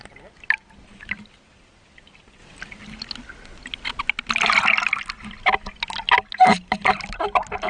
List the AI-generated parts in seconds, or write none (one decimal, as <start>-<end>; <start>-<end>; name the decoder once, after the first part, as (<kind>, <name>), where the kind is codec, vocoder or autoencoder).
none